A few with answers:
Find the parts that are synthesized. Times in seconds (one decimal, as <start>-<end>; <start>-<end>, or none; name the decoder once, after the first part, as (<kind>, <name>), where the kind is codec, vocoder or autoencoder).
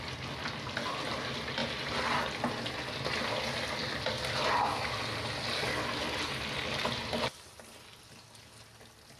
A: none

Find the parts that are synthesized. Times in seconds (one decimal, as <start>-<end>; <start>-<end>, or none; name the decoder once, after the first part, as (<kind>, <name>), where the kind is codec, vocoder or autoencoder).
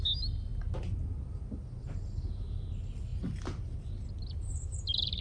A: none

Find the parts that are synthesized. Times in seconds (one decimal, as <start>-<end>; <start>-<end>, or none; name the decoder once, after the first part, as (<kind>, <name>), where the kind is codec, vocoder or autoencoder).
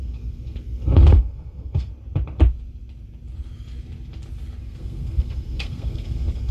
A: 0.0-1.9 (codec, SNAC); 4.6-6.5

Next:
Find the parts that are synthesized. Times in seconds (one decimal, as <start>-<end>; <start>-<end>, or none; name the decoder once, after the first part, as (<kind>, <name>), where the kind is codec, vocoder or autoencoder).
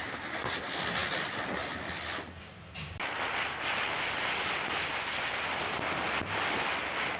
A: none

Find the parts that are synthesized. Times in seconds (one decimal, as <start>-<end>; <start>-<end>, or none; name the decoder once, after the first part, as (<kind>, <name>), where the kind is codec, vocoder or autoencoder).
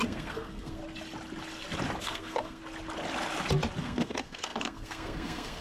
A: 0.0-0.8 (codec, SNAC); 2.0-2.6; 3.8-5.6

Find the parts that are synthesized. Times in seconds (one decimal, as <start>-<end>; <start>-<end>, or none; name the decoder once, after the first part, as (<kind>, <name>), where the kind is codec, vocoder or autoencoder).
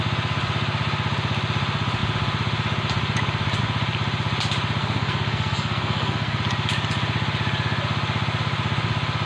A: 4.8-6.4 (codec, SNAC)